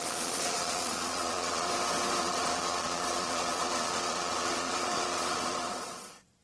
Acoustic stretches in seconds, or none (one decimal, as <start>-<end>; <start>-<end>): 1.7-2.2